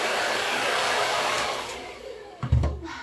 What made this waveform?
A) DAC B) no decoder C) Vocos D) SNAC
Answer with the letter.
A